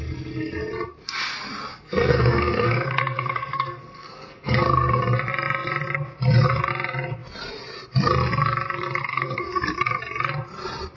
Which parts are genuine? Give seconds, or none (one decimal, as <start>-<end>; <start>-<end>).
0.0-1.7; 5.0-9.1; 9.7-11.0